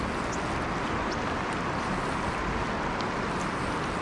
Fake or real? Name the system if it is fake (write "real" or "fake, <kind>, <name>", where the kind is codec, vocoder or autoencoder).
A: real